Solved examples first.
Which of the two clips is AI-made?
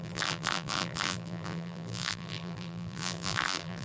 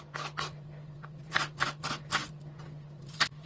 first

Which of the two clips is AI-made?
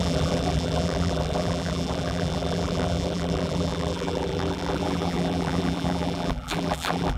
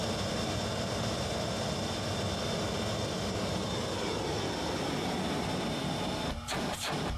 first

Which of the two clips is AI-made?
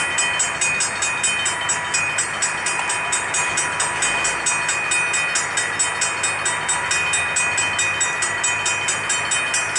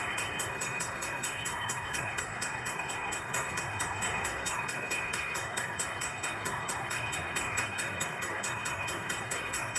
second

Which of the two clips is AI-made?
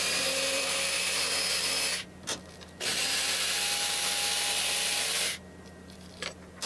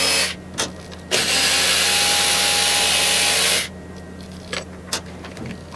first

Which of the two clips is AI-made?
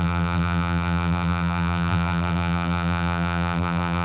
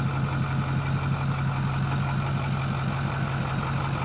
first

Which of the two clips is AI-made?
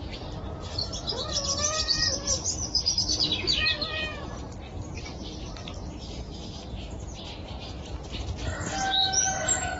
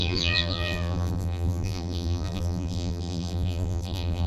second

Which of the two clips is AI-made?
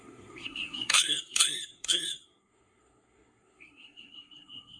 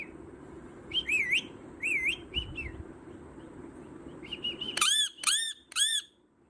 first